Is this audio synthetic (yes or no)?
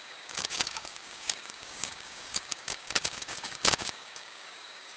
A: yes